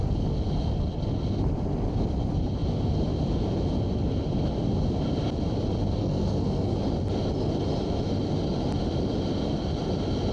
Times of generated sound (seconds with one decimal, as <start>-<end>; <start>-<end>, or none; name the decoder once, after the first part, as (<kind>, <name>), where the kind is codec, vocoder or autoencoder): 6.0-6.7 (codec, SNAC)